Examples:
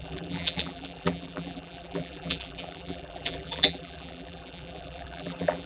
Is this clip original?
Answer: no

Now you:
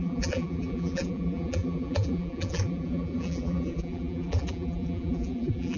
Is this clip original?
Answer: no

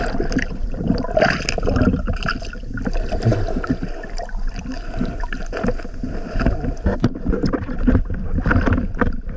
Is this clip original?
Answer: no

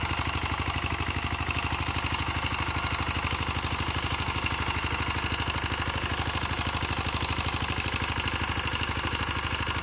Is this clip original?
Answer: yes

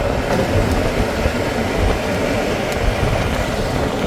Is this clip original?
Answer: yes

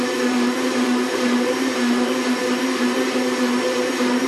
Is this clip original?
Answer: no